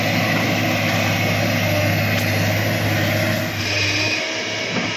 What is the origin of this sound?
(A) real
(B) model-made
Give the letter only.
A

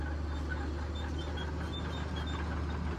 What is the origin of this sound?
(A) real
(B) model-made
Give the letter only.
A